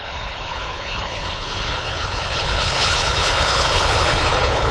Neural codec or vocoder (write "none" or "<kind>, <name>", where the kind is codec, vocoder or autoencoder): codec, HILCodec